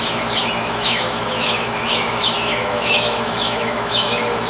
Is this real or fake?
fake